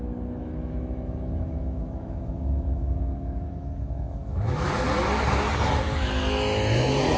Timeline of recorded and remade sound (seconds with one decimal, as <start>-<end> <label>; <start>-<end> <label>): 0.0-0.4 recorded; 0.4-4.7 remade; 4.7-7.2 recorded